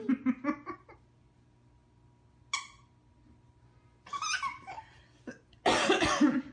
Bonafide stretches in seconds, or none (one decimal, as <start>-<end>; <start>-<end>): 0.0-6.5

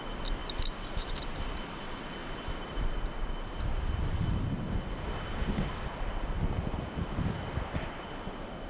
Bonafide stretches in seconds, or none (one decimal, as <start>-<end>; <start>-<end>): 0.0-8.7